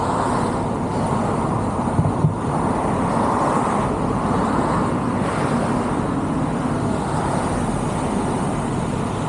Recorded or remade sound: recorded